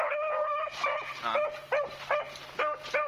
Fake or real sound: real